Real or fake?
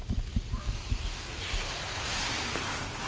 fake